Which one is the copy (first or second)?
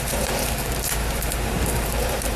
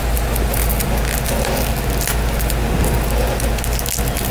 first